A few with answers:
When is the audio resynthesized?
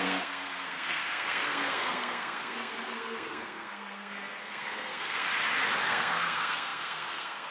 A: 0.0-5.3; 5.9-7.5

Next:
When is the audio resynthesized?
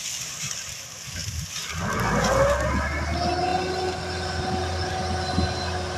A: none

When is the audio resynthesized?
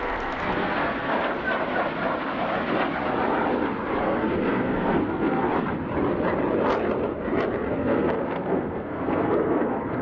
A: 0.0-1.1; 4.0-5.5; 7.7-10.0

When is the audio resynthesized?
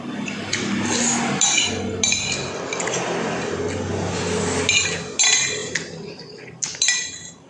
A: none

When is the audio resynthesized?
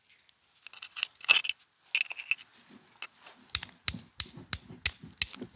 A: none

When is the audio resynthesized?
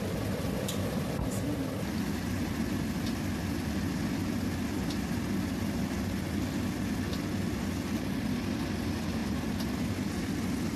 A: none